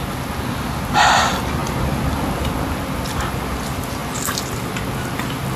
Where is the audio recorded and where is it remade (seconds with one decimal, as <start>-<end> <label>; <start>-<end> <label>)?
0.0-5.6 recorded